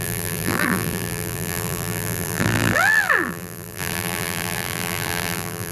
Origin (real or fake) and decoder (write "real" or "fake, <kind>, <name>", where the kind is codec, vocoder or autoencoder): fake, vocoder, BigVGAN v2